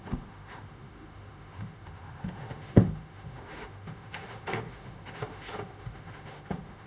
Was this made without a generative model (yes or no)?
no